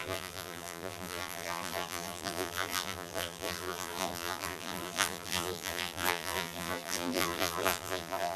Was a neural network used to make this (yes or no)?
yes